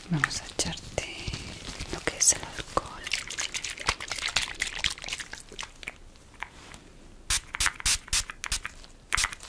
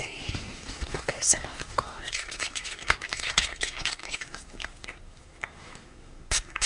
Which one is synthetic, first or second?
second